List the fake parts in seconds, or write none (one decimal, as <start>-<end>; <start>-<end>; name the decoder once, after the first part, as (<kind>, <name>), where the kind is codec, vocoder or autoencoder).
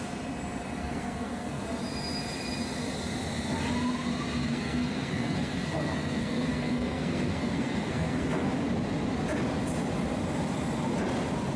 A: 0.8-1.6 (codec, SNAC); 4.4-8.5